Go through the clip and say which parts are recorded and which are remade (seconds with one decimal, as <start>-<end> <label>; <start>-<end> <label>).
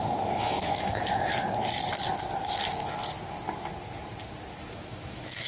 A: 0.0-1.3 remade; 1.3-4.6 recorded; 4.6-5.5 remade